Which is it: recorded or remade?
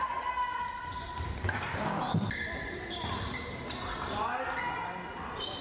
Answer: recorded